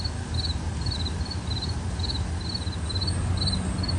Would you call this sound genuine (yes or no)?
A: yes